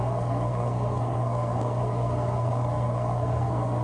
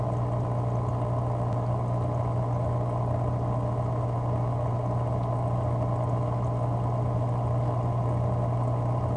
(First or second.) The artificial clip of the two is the first